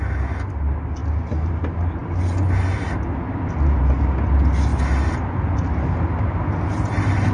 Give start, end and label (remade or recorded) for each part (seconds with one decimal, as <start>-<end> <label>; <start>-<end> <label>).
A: 0.0-7.3 recorded